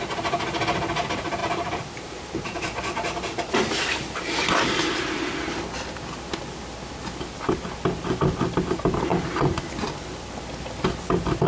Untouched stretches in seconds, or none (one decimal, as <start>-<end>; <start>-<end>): 0.0-1.4; 4.1-11.5